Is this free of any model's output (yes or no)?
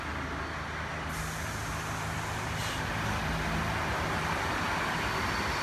yes